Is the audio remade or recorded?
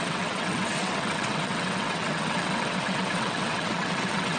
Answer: remade